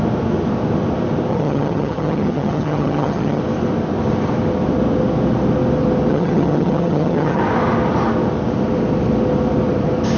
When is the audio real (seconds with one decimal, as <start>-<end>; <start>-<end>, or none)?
0.0-1.3; 3.4-6.1; 7.4-10.2